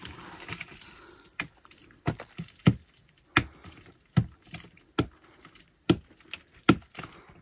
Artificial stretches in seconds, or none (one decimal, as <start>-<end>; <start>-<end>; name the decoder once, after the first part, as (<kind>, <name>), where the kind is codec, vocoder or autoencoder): 0.7-1.9 (vocoder, BigVGAN v2)